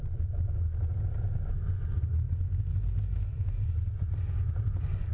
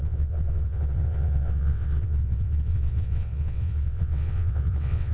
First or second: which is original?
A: first